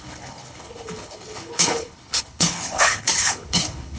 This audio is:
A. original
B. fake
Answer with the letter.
B